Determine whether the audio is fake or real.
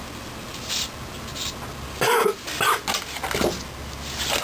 real